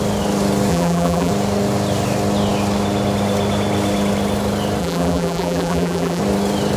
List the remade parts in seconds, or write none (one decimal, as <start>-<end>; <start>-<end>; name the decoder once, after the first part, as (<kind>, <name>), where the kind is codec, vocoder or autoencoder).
0.7-1.3 (vocoder, BigVGAN v2); 4.8-6.2